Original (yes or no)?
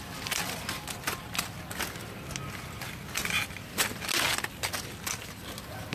yes